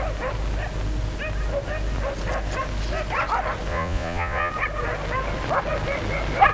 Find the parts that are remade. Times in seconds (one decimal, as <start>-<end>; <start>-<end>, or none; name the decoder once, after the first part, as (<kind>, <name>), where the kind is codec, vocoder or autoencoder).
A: 3.7-4.5 (vocoder, Vocos)